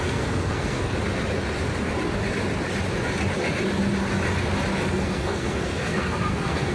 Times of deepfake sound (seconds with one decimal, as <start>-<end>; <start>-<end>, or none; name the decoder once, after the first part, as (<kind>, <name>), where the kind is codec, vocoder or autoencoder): 0.0-0.9 (codec, SNAC); 4.9-6.7